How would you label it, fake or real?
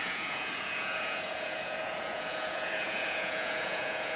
fake